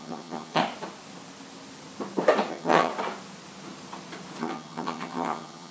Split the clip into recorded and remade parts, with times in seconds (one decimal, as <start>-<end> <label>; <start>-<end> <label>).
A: 0.0-0.6 remade; 0.6-2.5 recorded; 2.5-2.9 remade; 2.9-4.4 recorded; 4.4-5.7 remade